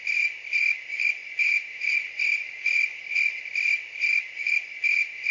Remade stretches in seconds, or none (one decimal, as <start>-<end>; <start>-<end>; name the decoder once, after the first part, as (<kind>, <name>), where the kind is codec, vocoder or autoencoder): none